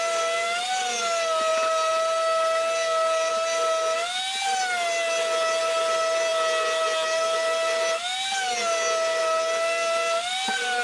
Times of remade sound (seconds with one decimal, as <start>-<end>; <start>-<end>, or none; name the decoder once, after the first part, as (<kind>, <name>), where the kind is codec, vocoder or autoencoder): none